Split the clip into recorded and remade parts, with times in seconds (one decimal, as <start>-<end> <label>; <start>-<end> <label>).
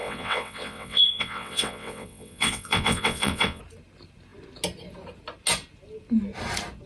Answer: 0.0-3.6 remade; 3.6-6.9 recorded